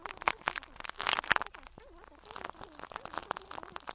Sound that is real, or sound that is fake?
real